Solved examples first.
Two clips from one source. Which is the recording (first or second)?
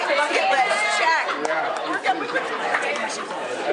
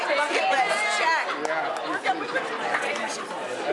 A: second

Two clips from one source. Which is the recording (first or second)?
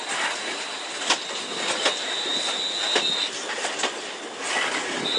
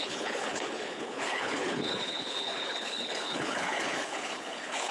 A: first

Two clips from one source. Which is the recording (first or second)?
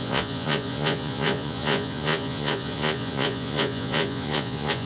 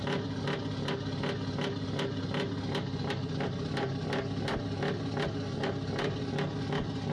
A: second